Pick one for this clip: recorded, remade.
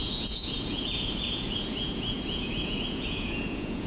remade